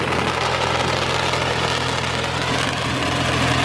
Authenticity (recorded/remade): recorded